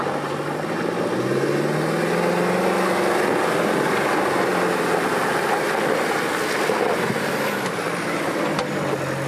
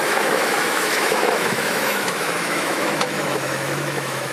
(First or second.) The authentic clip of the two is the first